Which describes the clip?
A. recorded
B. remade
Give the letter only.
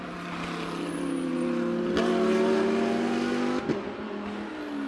A